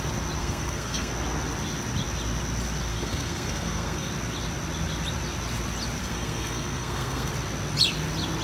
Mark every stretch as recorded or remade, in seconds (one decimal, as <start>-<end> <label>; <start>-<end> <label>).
0.0-0.4 recorded; 0.4-1.1 remade; 1.1-2.9 recorded; 2.9-4.1 remade; 4.1-6.0 recorded; 6.0-7.3 remade; 7.3-8.4 recorded